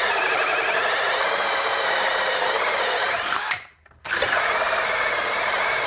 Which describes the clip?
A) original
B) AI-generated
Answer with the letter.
B